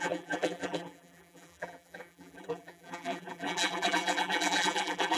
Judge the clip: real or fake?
fake